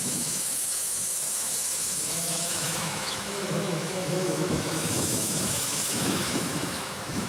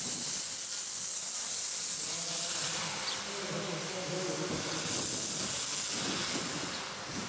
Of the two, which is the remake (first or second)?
first